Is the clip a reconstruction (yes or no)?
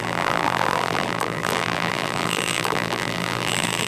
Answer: yes